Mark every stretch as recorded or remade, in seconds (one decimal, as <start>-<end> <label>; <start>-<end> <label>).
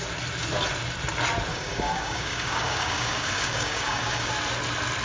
0.0-1.5 recorded; 1.5-4.3 remade; 4.3-5.0 recorded